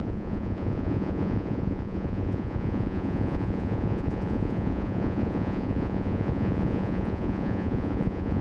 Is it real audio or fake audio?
fake